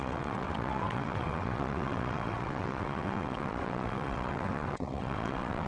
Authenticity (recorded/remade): remade